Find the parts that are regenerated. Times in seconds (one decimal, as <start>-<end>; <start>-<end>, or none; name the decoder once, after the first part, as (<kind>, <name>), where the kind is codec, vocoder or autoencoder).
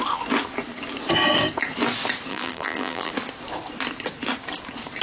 2.3-3.1 (vocoder, BigVGAN v2)